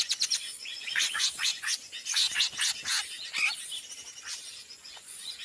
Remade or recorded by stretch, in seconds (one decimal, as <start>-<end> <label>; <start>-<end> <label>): 0.0-1.9 remade; 1.9-4.4 recorded; 4.4-5.4 remade